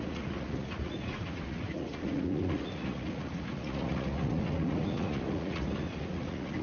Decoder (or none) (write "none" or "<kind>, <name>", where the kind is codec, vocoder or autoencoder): vocoder, Vocos